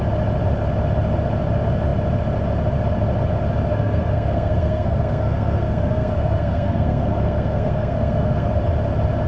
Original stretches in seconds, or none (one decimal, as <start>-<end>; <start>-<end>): 0.0-3.7; 8.5-9.3

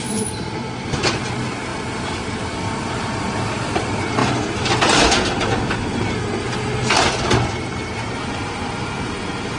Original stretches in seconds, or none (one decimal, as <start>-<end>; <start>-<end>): 4.2-8.3

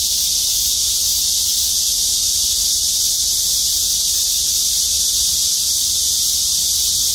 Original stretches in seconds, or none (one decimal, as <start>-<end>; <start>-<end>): 0.0-7.1

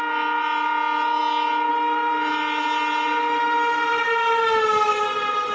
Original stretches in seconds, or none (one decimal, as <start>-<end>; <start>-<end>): 0.0-5.5